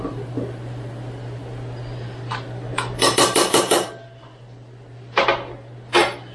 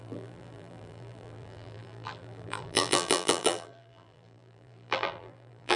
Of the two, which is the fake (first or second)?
second